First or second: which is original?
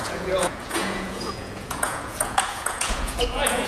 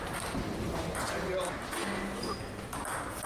second